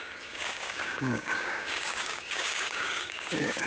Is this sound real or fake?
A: fake